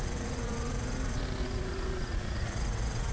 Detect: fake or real fake